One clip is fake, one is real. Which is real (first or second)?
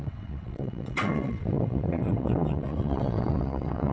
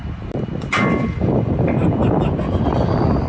second